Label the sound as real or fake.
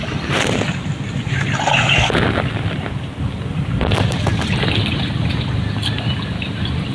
real